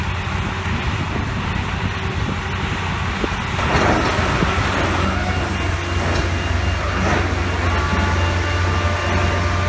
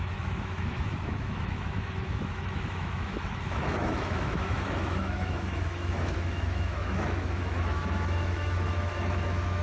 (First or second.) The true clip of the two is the first